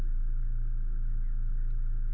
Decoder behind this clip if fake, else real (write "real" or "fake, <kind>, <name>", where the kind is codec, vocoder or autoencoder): real